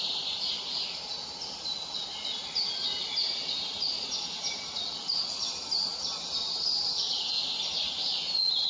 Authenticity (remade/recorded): recorded